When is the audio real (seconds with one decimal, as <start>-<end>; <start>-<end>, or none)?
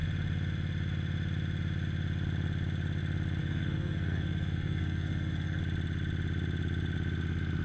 0.0-3.4; 5.6-7.6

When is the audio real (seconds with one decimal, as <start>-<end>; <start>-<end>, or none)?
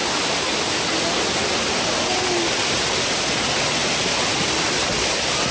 0.0-5.5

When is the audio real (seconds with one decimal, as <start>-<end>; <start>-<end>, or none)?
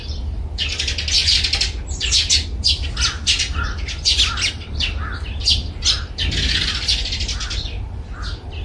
0.0-8.6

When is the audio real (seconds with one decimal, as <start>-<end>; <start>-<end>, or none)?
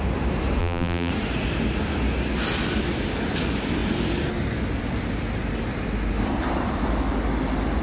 0.0-0.6; 1.1-7.8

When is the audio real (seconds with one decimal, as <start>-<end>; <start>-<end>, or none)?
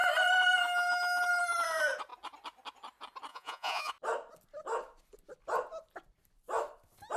0.0-3.3; 3.9-7.2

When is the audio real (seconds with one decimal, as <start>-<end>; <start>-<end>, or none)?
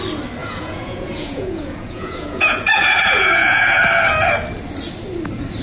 0.0-0.4; 3.8-5.6